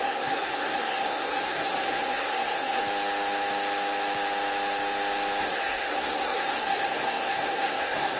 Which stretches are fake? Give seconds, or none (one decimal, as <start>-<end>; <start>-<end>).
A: 0.0-2.8; 5.4-8.2